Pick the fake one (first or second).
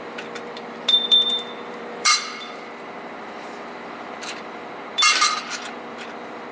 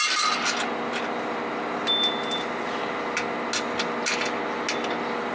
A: first